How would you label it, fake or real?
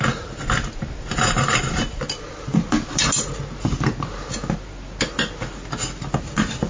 real